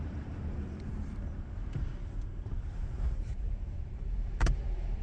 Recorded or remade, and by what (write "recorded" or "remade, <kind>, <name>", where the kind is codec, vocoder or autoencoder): remade, vocoder, BigVGAN v2